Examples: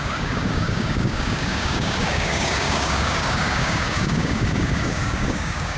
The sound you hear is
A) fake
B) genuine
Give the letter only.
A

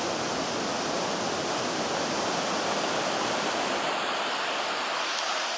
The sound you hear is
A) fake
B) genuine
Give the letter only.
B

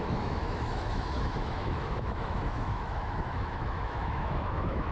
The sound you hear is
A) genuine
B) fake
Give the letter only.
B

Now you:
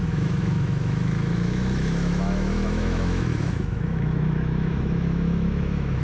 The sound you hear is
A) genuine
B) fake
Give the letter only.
B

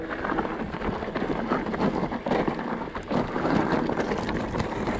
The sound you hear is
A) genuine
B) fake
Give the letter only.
A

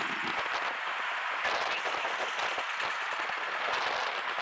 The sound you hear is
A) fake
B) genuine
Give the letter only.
B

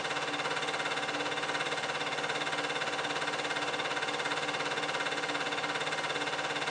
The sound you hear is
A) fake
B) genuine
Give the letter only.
B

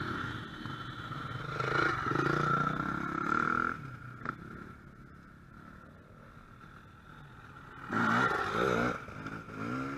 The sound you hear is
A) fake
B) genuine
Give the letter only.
B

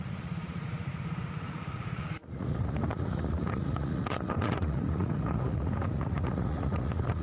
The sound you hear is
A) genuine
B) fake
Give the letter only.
B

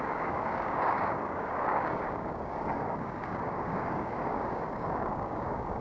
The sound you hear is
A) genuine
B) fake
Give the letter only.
B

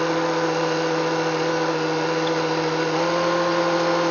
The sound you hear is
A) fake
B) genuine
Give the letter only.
B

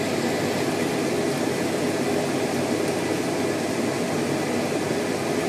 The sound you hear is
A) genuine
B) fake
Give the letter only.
A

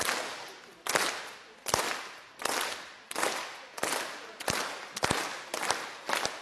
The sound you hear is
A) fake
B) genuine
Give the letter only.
B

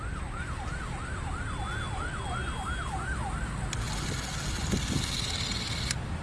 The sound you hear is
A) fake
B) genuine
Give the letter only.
B